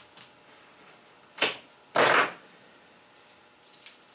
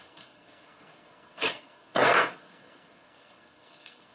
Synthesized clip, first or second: second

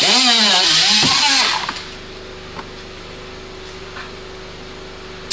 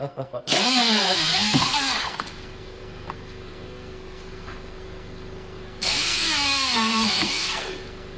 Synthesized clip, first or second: second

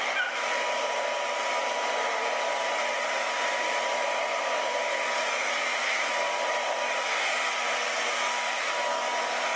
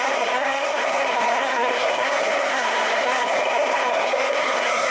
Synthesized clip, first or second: second